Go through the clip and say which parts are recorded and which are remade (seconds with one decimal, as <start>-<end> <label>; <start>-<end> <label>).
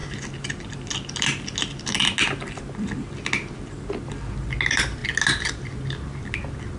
0.0-6.8 recorded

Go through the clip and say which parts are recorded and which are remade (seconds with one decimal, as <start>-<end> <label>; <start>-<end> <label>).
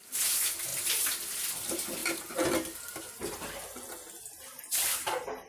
0.0-5.5 recorded